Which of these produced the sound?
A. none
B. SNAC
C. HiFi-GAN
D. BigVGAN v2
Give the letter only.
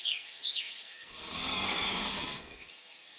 B